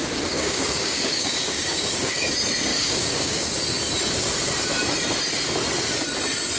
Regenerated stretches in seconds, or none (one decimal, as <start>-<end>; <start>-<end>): 0.0-2.3; 2.7-3.5